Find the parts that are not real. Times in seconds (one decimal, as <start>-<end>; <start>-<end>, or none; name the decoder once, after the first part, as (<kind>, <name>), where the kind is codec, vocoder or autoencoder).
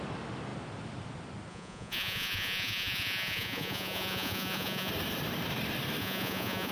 1.5-4.9 (vocoder, Vocos); 6.0-6.7